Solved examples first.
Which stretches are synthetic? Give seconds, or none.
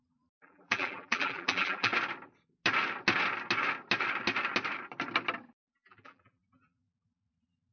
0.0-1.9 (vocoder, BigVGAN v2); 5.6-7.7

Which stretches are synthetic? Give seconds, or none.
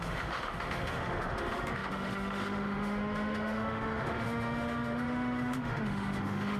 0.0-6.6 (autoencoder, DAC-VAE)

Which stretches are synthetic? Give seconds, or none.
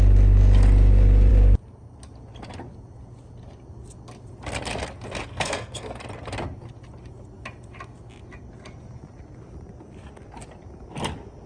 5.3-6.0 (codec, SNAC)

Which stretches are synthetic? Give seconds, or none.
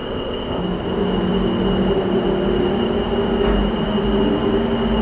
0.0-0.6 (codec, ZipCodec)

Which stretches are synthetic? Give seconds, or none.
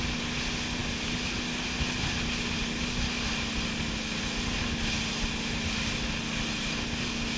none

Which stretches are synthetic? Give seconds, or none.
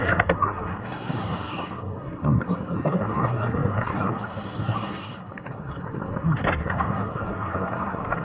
0.0-8.2 (codec, SNAC)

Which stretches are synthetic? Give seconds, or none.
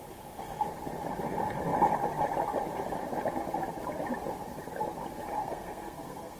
5.4-6.4 (codec, SNAC)